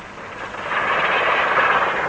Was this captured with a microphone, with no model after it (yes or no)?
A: yes